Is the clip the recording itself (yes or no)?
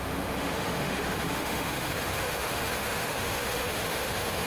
no